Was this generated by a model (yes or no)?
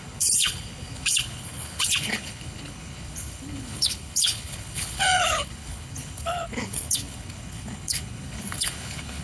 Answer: yes